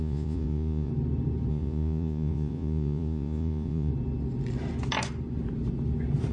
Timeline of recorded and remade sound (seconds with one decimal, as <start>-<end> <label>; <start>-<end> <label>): 0.0-0.9 remade; 0.9-1.5 recorded; 1.5-3.9 remade; 3.9-6.3 recorded